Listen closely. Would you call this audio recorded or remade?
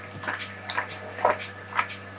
recorded